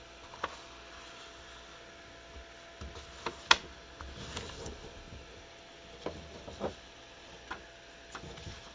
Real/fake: real